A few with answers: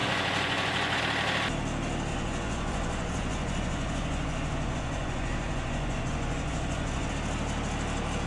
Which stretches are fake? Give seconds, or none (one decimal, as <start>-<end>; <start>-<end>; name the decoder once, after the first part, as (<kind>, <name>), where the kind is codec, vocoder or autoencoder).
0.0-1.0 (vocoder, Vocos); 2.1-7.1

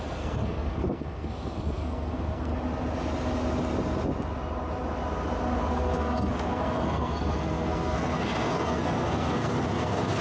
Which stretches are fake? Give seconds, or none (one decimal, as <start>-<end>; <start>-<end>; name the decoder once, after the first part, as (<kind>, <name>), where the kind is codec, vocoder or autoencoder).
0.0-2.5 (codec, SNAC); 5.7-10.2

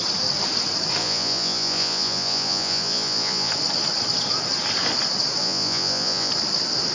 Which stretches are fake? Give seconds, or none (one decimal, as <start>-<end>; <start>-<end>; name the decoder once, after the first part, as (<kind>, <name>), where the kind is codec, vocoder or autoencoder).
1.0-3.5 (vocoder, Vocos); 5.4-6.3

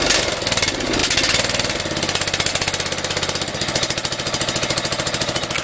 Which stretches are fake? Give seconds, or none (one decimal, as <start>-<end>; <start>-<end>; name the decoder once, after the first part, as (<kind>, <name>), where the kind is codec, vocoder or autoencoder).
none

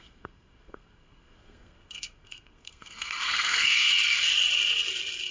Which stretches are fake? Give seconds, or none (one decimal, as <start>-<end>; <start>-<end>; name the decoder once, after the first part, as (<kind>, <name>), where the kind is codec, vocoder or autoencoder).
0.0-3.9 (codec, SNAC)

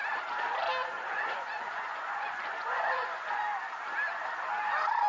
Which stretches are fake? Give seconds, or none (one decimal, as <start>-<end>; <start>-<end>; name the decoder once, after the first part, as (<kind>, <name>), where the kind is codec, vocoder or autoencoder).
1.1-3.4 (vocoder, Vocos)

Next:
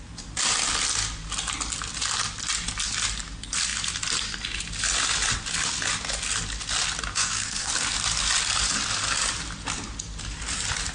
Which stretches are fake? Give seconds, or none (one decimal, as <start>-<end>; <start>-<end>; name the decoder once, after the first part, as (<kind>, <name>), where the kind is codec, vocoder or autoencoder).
7.1-7.7 (codec, SNAC)